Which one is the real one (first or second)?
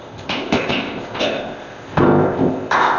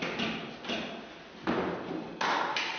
second